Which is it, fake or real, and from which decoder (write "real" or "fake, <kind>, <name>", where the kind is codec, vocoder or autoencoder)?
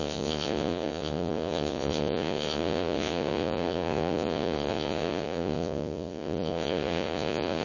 fake, vocoder, Vocos